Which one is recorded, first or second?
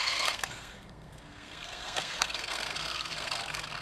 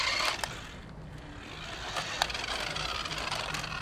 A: second